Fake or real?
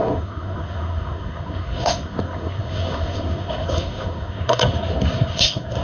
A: fake